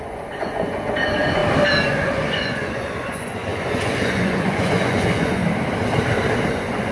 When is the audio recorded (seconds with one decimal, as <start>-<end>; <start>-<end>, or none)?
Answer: 1.4-1.9; 5.4-6.5